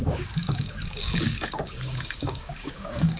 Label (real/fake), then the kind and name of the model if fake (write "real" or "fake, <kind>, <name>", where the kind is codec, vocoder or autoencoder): fake, codec, DAC